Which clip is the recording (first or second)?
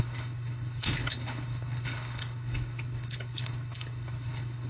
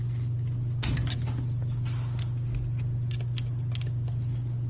second